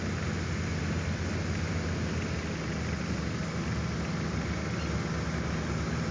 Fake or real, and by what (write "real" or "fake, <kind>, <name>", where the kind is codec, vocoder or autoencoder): real